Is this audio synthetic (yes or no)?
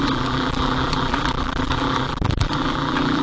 yes